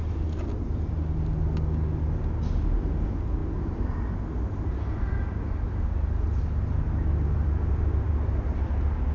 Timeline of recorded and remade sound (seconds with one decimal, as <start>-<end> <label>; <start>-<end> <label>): 0.0-9.1 recorded